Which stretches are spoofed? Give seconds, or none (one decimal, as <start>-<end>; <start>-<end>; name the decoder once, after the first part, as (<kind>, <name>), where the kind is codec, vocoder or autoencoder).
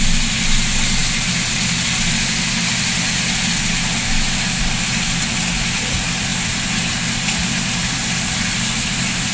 none